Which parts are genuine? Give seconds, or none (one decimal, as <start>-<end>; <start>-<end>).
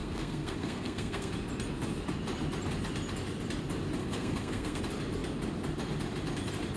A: 1.3-4.0; 4.8-6.8